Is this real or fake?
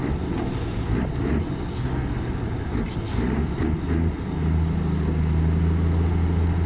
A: real